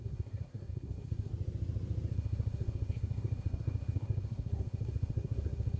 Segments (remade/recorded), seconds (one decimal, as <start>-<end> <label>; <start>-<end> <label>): 0.0-1.3 remade; 1.3-2.1 recorded; 2.1-5.8 remade